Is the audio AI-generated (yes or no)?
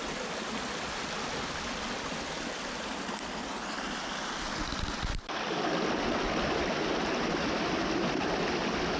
no